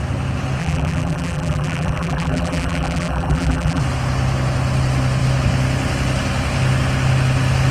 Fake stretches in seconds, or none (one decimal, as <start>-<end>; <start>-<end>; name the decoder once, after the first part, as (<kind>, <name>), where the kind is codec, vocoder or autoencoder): 0.6-3.8 (vocoder, BigVGAN v2)